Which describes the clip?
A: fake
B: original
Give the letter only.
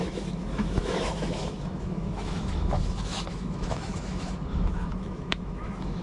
A